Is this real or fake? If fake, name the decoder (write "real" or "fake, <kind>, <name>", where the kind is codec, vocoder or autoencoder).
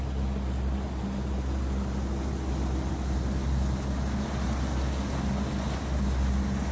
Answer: real